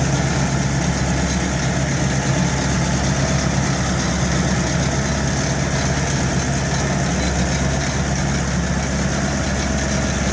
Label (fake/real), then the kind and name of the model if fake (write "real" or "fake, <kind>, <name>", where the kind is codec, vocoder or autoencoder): real